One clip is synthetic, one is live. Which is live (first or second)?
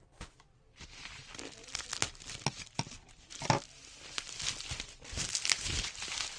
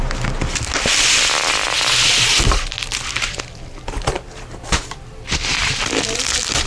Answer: second